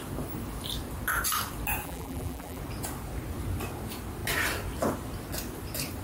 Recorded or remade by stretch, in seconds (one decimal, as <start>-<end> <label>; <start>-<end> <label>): 0.0-1.8 recorded; 1.8-2.6 remade; 2.6-6.0 recorded